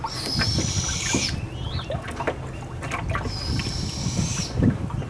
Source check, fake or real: real